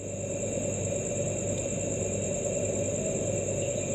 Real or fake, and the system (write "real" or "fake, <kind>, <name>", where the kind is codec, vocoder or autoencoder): real